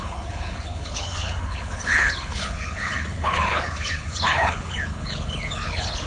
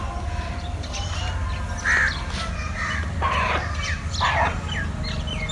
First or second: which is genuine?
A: second